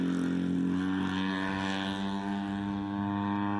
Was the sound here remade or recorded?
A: recorded